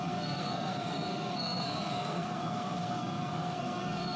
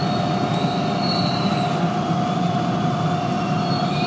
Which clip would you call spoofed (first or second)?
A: first